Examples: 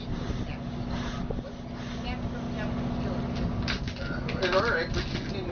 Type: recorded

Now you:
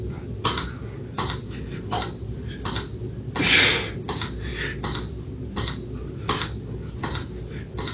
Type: recorded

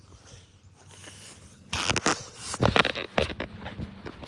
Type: recorded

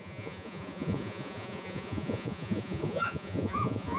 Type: remade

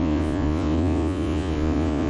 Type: remade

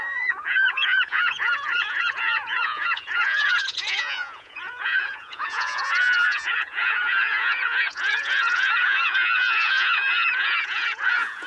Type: remade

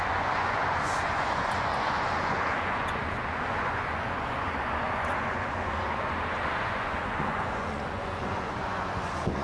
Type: remade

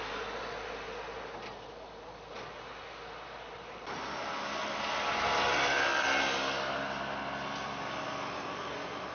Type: recorded